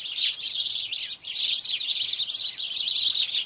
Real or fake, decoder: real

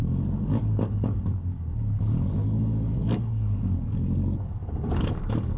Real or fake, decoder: fake, codec, DAC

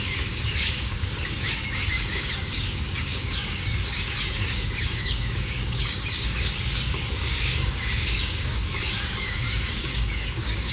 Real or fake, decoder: fake, codec, DAC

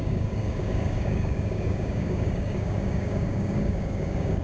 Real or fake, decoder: fake, codec, DAC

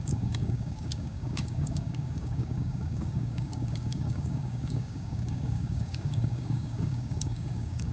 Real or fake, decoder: fake, codec, DAC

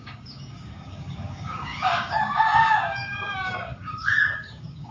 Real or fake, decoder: fake, codec, DAC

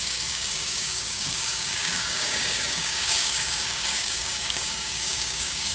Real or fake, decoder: fake, codec, DAC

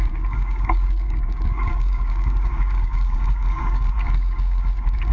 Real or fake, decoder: fake, codec, DAC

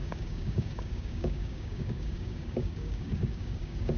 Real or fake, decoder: fake, codec, DAC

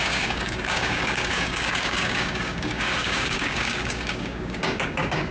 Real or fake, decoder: fake, codec, DAC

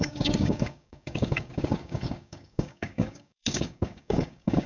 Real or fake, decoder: fake, codec, DAC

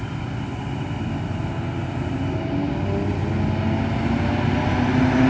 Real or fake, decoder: real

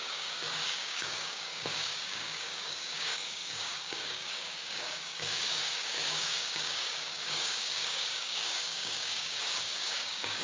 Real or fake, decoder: fake, codec, DAC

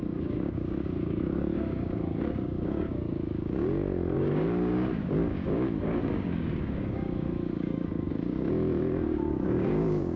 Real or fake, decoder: fake, codec, DAC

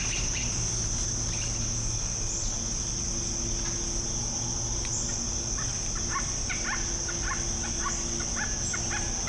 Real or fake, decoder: real